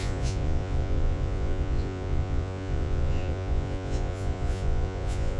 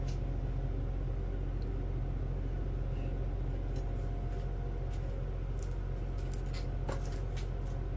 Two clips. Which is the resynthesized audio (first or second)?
first